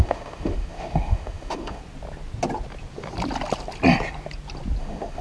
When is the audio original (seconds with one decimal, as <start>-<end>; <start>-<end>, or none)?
1.8-4.8